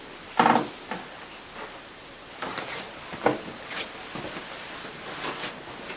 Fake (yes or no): no